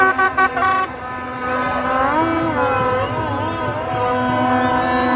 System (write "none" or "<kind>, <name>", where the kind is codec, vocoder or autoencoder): none